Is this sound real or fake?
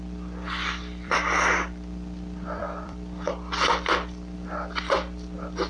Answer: fake